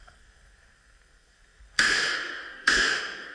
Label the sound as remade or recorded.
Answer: remade